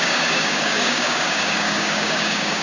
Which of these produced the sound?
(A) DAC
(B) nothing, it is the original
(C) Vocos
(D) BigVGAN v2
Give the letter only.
A